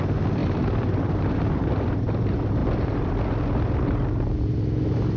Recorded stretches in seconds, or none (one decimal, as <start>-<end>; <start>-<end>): 0.0-0.4; 2.1-5.2